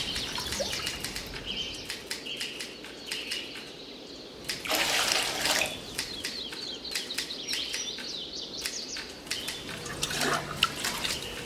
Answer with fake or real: real